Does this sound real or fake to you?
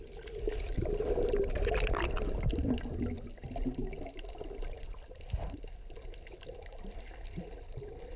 real